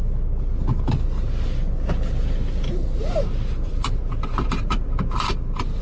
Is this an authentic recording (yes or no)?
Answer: yes